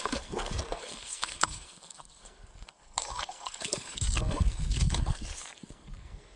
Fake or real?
fake